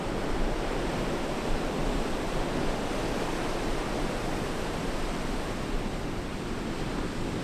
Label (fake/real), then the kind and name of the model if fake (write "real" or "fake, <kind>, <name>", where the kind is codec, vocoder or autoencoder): real